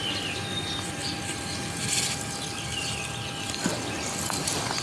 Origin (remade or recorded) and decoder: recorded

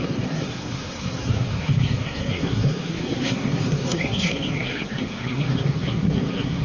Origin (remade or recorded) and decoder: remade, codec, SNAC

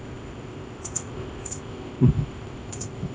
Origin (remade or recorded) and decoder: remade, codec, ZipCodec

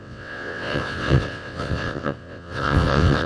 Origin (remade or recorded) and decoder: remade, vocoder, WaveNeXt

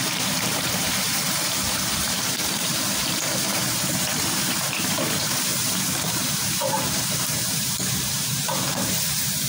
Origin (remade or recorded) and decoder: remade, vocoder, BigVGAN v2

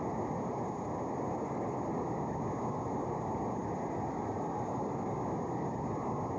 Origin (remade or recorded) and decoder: recorded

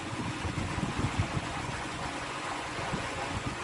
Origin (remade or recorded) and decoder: remade, vocoder, Vocos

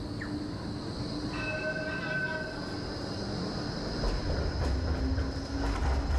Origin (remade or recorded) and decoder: recorded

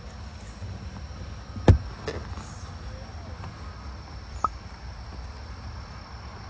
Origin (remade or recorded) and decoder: recorded